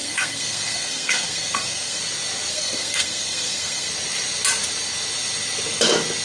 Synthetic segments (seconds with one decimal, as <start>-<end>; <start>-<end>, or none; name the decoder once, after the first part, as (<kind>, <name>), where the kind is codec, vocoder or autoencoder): 0.0-2.0 (codec, SNAC); 2.5-3.9